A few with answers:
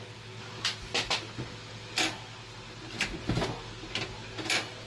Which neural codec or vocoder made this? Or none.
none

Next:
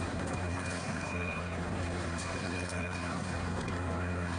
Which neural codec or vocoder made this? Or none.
codec, SNAC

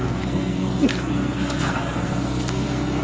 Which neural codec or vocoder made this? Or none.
codec, SNAC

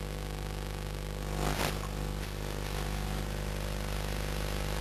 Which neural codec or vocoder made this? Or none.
none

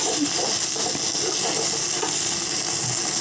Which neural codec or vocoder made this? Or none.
none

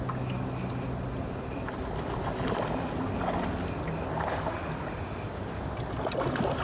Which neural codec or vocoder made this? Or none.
none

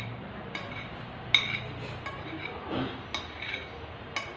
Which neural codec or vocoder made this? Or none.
none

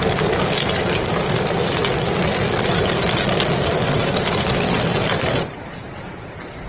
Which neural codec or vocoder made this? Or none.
none